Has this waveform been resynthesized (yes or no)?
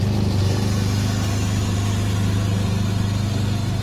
no